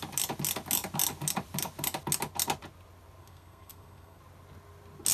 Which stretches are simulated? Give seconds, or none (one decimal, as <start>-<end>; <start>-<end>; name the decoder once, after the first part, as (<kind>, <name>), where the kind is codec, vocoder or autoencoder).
3.2-4.2 (codec, SNAC)